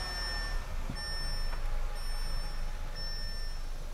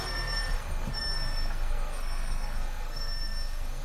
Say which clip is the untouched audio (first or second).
first